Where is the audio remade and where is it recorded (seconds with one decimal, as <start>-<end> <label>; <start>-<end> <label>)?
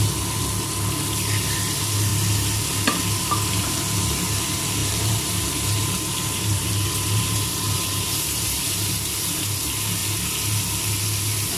0.0-4.8 recorded; 4.8-9.6 remade; 9.6-11.6 recorded